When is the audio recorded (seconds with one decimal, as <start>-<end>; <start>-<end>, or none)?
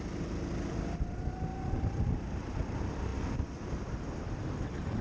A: 0.0-1.5; 2.1-5.0